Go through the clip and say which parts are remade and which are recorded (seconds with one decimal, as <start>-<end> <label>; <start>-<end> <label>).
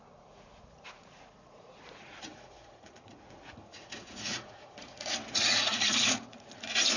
0.0-7.0 remade